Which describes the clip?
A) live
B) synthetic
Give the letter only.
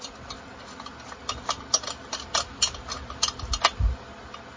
A